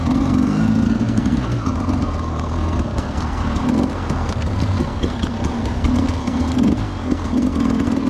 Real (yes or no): no